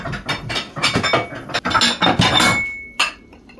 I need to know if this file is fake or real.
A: real